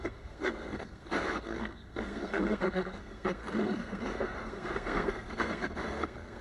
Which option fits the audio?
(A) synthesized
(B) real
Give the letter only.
A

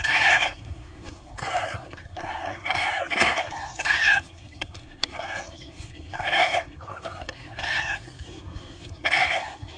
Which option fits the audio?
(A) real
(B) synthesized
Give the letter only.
B